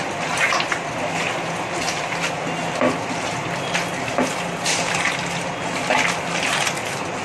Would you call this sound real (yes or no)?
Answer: yes